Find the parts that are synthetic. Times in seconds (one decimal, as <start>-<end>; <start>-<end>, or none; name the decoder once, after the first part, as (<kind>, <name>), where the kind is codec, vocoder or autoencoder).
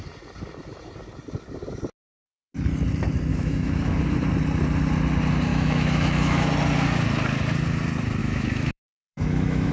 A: 3.3-3.9 (autoencoder, DAC-VAE); 5.5-6.5; 8.2-9.7